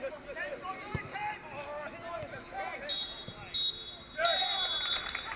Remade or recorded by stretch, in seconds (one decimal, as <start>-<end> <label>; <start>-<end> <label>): 0.0-5.4 recorded